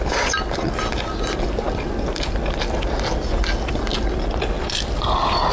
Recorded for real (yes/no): yes